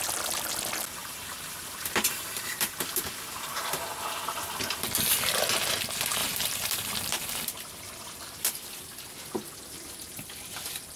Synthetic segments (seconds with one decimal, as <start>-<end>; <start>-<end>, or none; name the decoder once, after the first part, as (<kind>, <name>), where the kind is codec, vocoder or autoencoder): 1.0-3.7 (vocoder, BigVGAN v2); 6.2-8.7